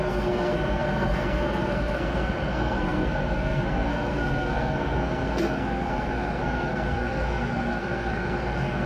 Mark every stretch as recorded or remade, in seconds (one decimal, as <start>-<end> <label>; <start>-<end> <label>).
0.0-8.9 remade